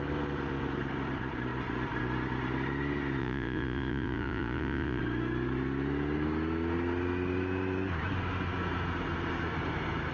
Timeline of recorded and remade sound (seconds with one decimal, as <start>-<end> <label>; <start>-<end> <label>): 0.0-3.2 recorded; 3.2-5.0 remade; 5.0-10.1 recorded